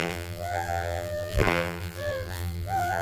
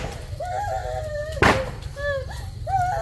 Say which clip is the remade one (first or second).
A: first